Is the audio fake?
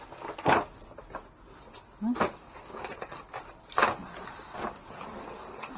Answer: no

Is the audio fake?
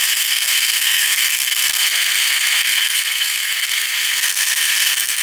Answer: yes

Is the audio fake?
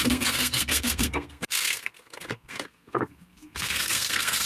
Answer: yes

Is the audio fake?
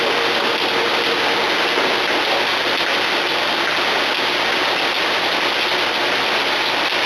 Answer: no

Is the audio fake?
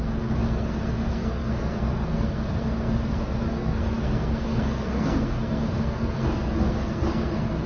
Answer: yes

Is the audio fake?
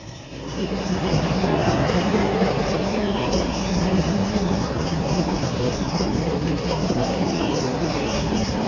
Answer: yes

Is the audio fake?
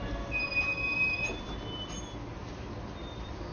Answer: no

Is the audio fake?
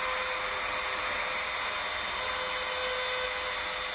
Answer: no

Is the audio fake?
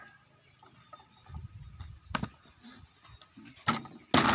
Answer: no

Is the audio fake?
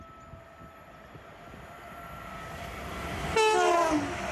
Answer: no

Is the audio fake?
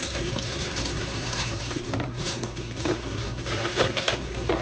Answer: yes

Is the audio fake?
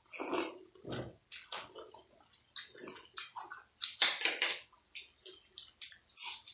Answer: no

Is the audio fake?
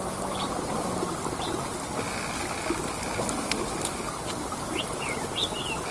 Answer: no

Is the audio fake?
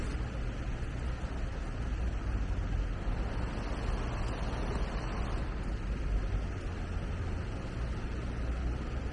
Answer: no